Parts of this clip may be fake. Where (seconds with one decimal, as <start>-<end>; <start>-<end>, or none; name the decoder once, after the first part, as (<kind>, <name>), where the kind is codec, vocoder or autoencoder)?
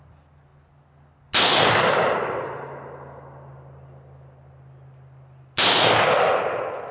none